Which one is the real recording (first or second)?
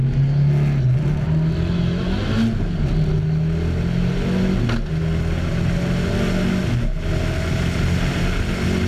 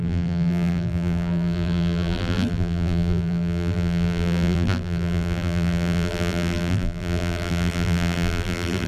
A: first